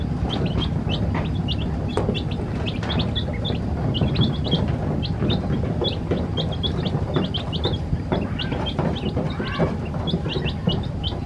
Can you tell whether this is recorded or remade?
recorded